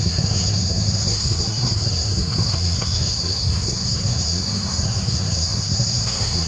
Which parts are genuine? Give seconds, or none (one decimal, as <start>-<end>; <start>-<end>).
none